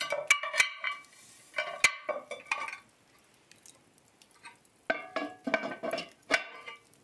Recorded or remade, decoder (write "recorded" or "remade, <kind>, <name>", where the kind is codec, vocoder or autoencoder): recorded